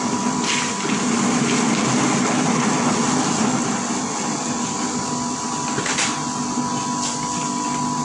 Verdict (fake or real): real